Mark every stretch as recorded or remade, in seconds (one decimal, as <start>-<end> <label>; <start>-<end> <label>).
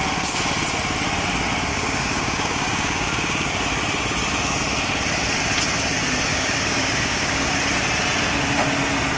0.0-1.7 recorded; 1.7-3.5 remade; 3.5-6.3 recorded; 6.3-7.5 remade; 7.5-9.2 recorded